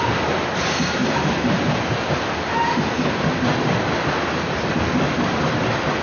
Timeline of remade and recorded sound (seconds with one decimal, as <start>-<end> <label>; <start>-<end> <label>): 0.0-6.0 recorded